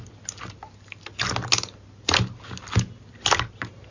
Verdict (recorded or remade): recorded